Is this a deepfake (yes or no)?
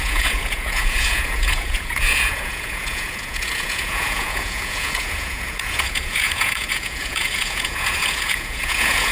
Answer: yes